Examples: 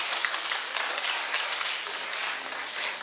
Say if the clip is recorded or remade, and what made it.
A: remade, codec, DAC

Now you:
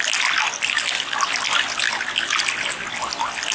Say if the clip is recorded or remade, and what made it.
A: recorded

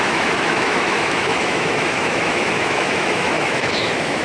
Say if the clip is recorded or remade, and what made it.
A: remade, autoencoder, DAC-VAE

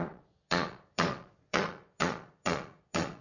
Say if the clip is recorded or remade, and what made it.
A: remade, vocoder, Vocos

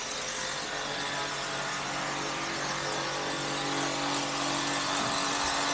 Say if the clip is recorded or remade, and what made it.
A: recorded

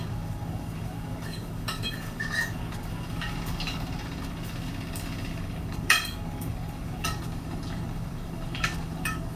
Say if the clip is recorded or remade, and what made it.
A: remade, codec, DAC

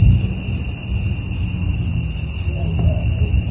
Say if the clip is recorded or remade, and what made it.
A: recorded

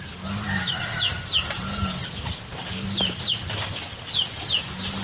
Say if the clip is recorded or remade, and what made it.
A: recorded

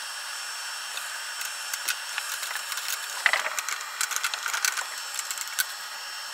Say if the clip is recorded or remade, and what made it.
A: recorded